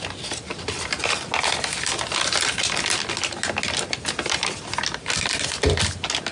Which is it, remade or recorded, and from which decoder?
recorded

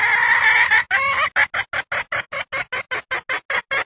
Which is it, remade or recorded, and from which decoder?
recorded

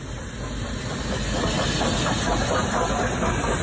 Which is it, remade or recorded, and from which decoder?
recorded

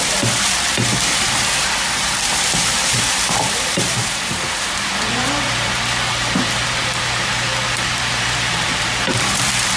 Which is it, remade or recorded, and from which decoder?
remade, vocoder, BigVGAN v2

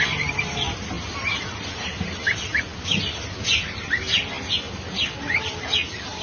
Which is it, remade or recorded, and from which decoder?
recorded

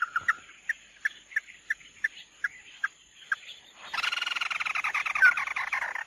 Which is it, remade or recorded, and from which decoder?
recorded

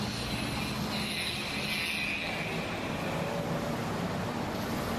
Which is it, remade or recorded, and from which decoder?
recorded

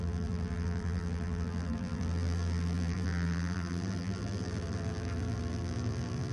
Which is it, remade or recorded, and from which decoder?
remade, vocoder, BigVGAN v2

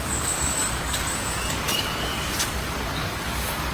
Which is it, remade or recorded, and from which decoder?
remade, codec, DAC